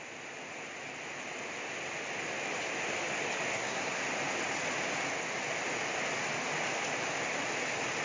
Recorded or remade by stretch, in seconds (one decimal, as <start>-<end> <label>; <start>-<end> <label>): 0.0-3.5 recorded; 3.5-4.0 remade; 4.0-8.0 recorded